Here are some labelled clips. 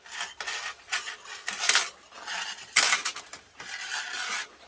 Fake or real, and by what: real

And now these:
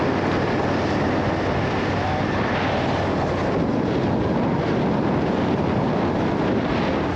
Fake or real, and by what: real